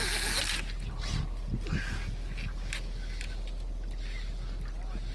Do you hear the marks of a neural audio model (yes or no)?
no